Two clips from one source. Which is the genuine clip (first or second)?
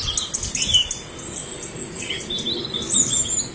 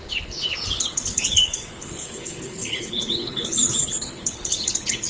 first